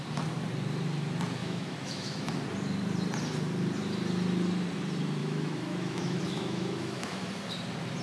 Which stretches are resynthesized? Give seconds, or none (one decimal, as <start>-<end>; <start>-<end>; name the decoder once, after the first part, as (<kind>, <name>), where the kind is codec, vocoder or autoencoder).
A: 1.4-2.3 (autoencoder, DAC-VAE); 5.2-7.3